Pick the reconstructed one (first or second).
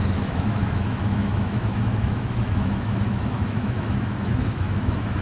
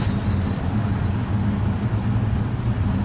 first